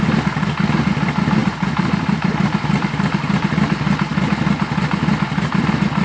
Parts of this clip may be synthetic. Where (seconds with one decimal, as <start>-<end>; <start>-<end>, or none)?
1.4-3.5